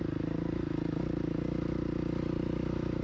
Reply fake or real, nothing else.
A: real